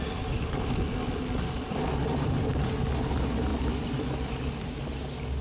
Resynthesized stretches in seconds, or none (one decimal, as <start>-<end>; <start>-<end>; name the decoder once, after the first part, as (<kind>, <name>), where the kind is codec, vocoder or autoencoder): none